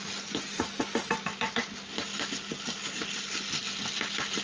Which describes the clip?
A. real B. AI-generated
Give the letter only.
A